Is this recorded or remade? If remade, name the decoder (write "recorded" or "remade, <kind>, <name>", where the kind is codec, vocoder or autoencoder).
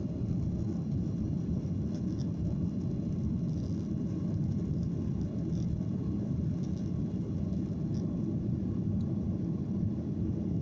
recorded